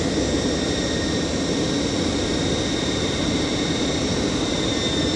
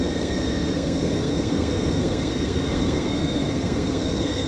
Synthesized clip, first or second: second